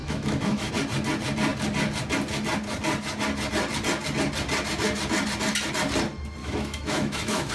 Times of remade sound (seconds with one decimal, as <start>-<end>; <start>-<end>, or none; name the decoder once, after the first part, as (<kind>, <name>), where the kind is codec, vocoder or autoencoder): 0.0-0.7 (autoencoder, DAC-VAE); 6.4-7.5